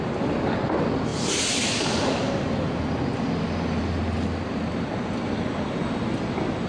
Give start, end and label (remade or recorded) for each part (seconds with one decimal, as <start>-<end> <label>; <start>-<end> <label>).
0.0-6.7 recorded